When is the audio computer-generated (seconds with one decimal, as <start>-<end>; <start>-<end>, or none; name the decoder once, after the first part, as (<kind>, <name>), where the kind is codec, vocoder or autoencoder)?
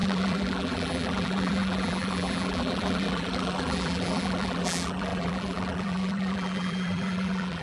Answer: 0.0-7.6 (vocoder, BigVGAN v2)